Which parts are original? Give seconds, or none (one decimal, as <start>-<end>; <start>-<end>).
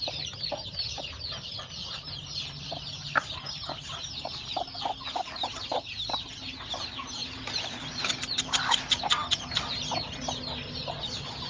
0.0-11.5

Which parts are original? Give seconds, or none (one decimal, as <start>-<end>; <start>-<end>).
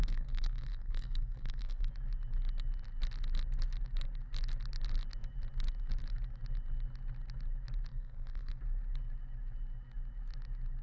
1.9-7.9; 8.6-10.8